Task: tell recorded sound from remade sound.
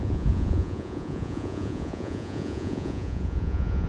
remade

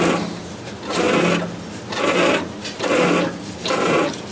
recorded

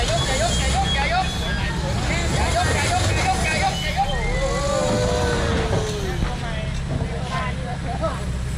recorded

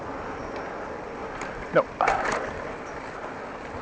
recorded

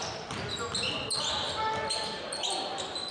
recorded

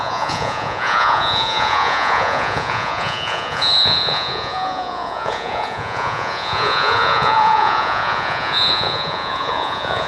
remade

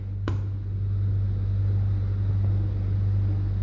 recorded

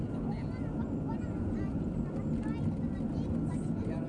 recorded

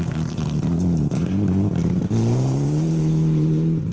recorded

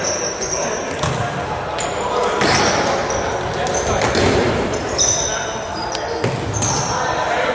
recorded